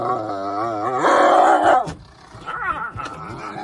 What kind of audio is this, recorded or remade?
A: recorded